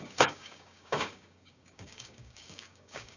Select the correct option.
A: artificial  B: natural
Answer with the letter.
A